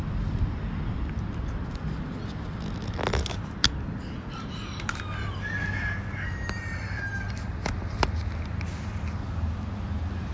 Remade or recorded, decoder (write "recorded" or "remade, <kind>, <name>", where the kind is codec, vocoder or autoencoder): recorded